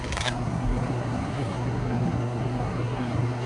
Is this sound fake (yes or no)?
yes